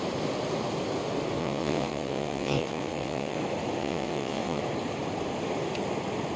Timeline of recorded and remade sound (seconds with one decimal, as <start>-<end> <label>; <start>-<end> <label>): 0.0-1.4 recorded; 1.4-3.4 remade; 3.4-3.8 recorded; 3.8-4.6 remade; 4.6-6.4 recorded